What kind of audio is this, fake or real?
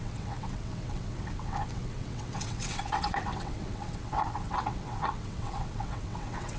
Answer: fake